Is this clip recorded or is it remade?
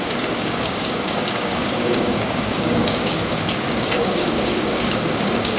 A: remade